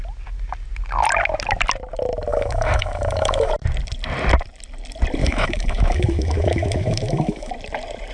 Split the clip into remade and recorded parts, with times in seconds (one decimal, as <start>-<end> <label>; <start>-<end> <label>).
0.0-2.3 recorded; 2.3-3.5 remade; 3.5-5.2 recorded; 5.2-7.5 remade; 7.5-8.1 recorded